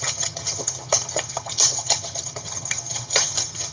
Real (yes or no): no